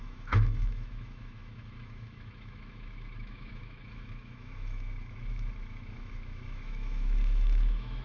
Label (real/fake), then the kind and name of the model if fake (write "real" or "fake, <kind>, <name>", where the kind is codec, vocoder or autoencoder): fake, autoencoder, DAC-VAE